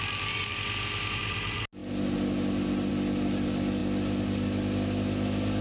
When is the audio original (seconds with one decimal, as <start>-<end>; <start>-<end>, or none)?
0.0-5.6